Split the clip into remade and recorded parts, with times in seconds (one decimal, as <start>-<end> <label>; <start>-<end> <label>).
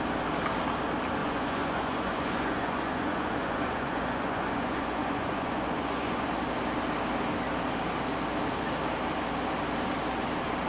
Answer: 0.0-1.2 recorded; 1.2-6.3 remade; 6.3-10.7 recorded